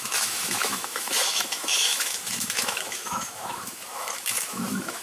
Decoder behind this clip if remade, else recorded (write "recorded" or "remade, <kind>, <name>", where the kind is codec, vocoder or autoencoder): remade, autoencoder, DAC-VAE